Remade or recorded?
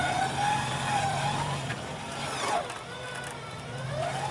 remade